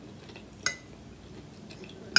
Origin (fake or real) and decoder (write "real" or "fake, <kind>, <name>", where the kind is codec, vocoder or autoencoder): real